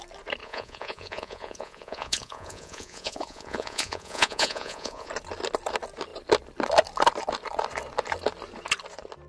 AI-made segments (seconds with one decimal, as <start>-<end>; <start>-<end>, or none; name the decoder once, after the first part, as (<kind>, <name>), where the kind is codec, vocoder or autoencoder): 0.4-5.1 (vocoder, Vocos)